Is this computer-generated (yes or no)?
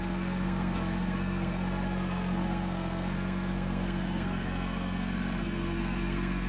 yes